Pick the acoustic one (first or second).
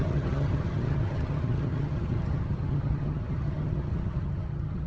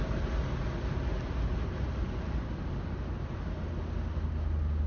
second